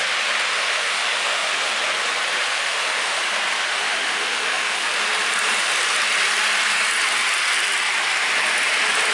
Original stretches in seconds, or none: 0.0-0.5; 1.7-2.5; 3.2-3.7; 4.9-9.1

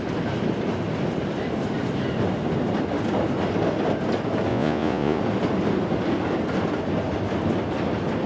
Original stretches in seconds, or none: 0.0-4.5; 5.2-8.3